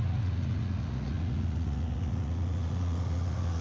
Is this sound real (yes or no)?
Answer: no